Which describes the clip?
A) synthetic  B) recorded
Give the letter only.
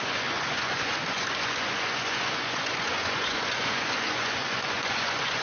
A